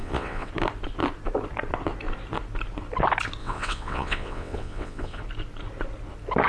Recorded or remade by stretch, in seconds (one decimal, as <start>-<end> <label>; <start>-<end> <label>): 0.0-0.5 remade; 0.5-3.4 recorded; 3.4-5.2 remade; 5.2-6.5 recorded